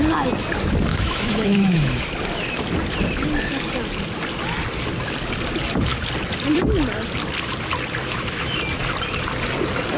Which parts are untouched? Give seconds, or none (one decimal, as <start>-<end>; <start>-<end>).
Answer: 0.0-0.9; 2.0-8.0; 8.6-10.0